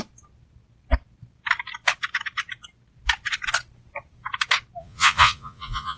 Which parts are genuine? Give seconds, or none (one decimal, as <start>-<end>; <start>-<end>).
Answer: 0.0-4.8